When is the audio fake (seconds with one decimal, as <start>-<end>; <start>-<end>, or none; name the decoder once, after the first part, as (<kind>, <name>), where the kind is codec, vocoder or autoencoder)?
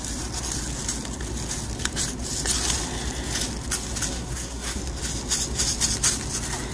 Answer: 4.1-4.8 (codec, SNAC)